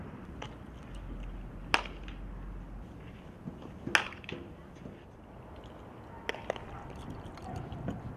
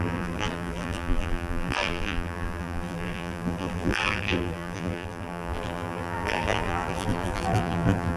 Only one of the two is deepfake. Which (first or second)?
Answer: second